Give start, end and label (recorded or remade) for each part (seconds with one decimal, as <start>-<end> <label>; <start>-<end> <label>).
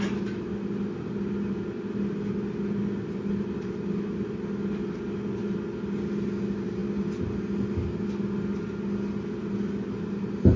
0.0-10.6 recorded